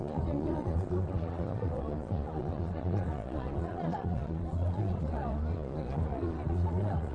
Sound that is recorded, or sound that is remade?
remade